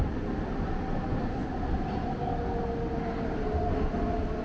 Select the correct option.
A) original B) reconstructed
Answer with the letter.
A